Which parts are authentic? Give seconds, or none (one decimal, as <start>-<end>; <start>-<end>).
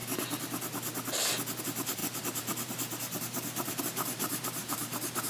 0.0-1.6